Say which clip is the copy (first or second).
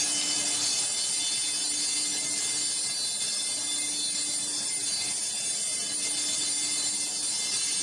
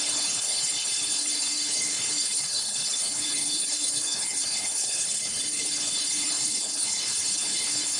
second